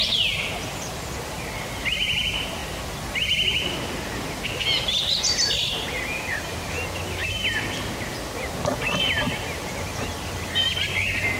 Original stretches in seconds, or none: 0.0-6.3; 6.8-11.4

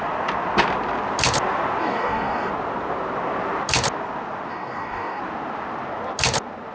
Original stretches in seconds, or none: 0.0-1.8; 2.5-4.5; 5.2-6.7

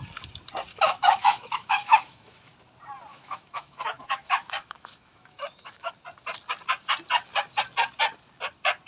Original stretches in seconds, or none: 0.0-0.7; 2.5-3.1; 5.9-8.9